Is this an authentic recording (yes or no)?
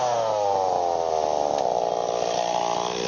yes